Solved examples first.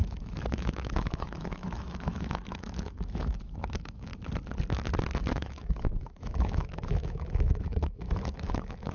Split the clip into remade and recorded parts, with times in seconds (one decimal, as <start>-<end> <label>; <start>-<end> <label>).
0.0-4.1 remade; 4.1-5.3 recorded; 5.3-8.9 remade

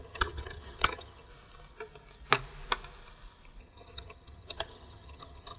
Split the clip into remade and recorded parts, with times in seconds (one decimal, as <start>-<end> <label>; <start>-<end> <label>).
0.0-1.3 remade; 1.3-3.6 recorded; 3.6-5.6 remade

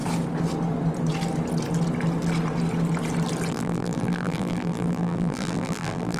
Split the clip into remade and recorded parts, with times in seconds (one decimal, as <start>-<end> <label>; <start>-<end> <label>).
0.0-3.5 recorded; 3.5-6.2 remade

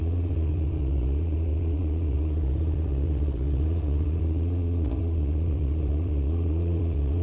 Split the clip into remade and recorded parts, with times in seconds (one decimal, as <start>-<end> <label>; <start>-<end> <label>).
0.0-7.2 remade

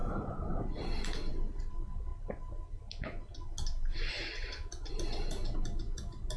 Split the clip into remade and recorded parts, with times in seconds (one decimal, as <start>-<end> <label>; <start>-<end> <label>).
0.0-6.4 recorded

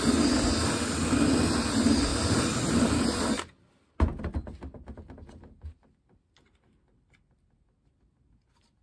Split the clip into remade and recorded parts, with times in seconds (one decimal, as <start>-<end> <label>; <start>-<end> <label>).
0.0-8.8 recorded

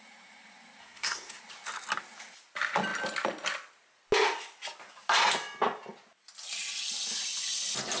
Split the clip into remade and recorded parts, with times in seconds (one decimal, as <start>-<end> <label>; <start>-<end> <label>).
0.0-0.8 recorded; 0.8-1.4 remade; 1.4-8.0 recorded